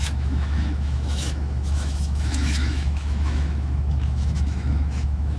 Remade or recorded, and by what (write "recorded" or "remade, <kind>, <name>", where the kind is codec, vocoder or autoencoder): remade, autoencoder, DAC-VAE